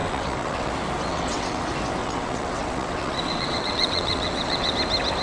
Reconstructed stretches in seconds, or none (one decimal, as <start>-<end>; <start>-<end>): 0.0-0.7; 1.1-1.6; 2.0-4.7